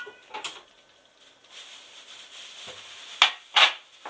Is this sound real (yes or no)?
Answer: yes